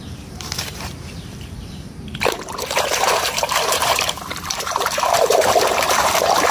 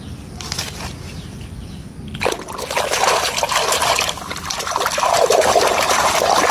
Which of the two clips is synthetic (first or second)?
first